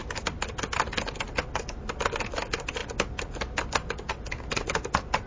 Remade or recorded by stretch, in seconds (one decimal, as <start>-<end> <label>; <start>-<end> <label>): 0.0-5.3 recorded